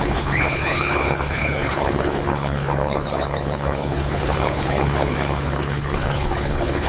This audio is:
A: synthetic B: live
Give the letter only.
A